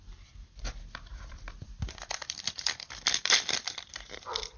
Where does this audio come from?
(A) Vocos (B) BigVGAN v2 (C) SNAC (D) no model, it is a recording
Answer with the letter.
B